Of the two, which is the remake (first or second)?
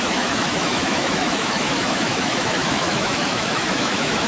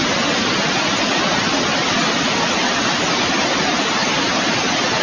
first